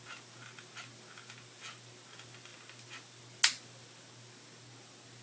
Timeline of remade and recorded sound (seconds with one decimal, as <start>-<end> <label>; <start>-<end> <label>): 0.0-5.2 recorded